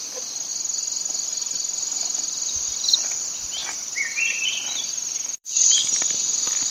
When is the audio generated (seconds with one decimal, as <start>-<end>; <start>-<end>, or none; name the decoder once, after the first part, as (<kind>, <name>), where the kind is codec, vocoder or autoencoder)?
3.6-6.0 (vocoder, BigVGAN v2)